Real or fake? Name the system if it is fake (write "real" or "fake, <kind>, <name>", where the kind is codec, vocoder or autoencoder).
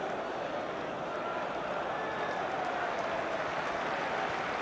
real